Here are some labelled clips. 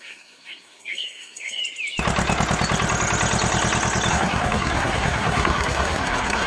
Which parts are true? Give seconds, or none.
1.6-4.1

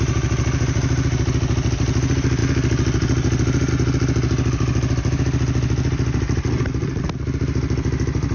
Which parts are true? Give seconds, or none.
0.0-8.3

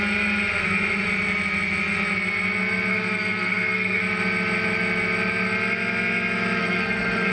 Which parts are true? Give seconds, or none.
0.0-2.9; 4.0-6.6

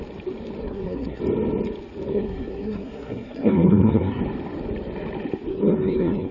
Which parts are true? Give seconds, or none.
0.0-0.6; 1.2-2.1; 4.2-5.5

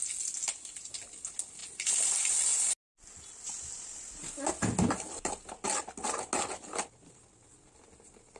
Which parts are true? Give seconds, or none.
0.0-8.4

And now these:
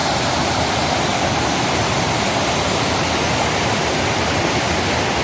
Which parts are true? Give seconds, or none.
3.1-3.8; 4.5-5.2